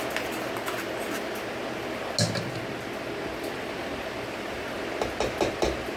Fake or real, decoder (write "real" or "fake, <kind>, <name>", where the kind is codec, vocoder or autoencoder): real